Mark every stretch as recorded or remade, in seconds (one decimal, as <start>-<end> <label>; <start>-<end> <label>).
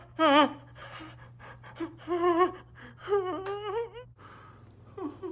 0.0-5.3 recorded